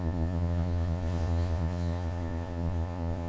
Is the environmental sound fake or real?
fake